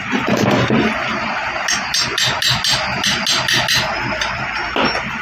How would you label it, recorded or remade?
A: recorded